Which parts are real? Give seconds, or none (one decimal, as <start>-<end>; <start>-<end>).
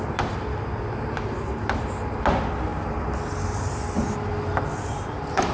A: 0.0-5.5